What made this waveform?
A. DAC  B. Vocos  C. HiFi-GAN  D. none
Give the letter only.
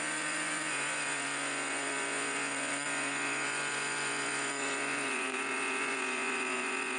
B